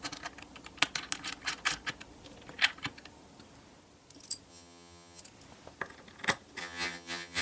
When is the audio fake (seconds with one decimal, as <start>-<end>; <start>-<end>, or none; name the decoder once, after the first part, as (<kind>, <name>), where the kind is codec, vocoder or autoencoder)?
4.5-5.2 (vocoder, HiFi-GAN); 6.6-7.4